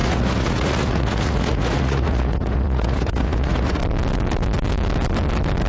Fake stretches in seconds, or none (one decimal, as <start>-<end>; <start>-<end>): 0.0-3.8